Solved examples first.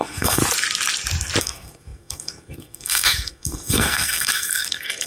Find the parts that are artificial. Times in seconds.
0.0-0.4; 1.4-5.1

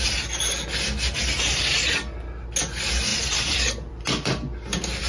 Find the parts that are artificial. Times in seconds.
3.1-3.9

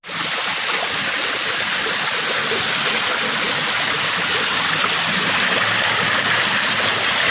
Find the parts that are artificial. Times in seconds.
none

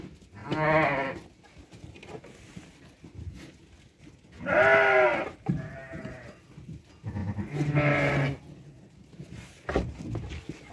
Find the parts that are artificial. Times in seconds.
5.1-6.2

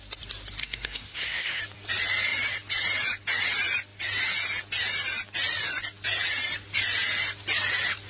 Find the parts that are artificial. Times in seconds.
0.6-1.6